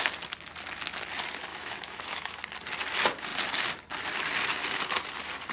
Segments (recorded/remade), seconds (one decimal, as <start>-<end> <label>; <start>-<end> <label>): 0.0-1.5 recorded; 1.5-2.4 remade; 2.4-5.5 recorded